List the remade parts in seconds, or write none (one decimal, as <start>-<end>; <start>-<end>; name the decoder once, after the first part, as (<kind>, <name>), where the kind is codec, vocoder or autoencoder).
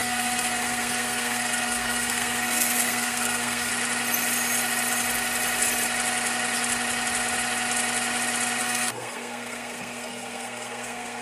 0.0-3.7 (codec, SNAC); 8.6-11.2